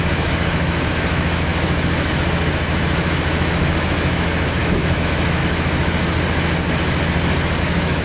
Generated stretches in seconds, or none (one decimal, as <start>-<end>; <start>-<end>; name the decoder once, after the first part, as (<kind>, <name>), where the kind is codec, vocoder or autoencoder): 0.0-5.4 (autoencoder, DAC-VAE); 7.6-8.0